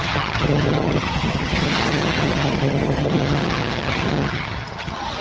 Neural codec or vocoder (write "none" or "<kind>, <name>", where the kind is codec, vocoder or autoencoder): vocoder, HiFi-GAN